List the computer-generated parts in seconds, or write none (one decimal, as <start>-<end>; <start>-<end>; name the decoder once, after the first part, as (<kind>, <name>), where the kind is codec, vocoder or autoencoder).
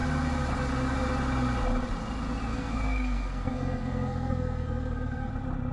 2.5-5.3 (codec, SNAC)